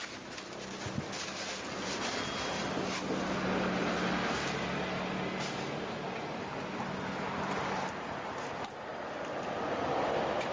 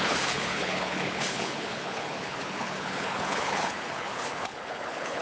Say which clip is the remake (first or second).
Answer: second